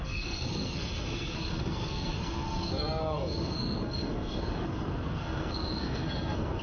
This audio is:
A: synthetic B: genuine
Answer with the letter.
A